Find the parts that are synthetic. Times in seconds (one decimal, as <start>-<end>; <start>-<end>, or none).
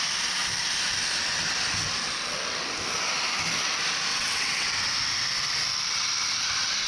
4.1-4.7